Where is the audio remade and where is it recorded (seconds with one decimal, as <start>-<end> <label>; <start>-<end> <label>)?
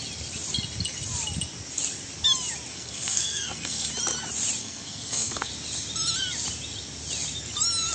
0.0-2.7 recorded; 2.7-3.9 remade; 3.9-4.6 recorded; 4.6-5.5 remade; 5.5-7.9 recorded